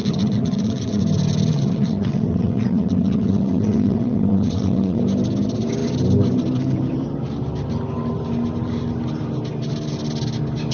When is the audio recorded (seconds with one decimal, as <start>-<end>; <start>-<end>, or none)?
1.0-1.5; 5.0-10.7